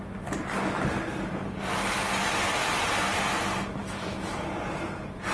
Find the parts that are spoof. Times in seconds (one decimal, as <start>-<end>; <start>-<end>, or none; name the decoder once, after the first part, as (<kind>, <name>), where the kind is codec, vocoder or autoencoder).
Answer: 3.8-4.5 (autoencoder, DAC-VAE)

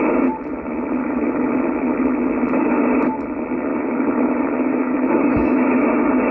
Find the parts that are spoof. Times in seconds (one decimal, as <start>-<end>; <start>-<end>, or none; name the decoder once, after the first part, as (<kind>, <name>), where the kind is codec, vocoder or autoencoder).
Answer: 1.0-1.6 (autoencoder, DAC-VAE); 3.7-5.8

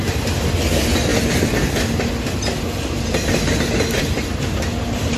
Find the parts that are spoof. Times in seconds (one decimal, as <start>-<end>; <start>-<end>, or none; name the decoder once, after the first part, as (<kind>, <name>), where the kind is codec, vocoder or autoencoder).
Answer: none

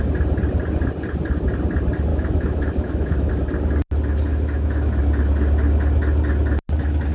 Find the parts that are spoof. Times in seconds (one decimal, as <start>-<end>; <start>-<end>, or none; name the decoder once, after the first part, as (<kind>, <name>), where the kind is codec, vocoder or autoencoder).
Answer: 2.1-3.3 (autoencoder, DAC-VAE); 4.3-5.0

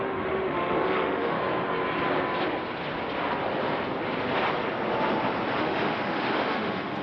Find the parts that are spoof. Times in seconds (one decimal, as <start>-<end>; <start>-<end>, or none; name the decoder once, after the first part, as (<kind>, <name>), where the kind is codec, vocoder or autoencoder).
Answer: 0.0-1.4 (autoencoder, DAC-VAE); 5.6-7.0